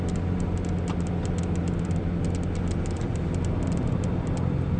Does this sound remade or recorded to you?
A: recorded